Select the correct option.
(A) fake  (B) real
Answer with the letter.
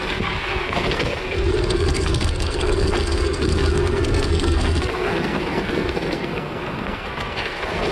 A